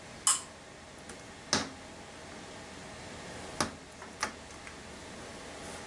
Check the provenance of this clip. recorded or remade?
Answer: recorded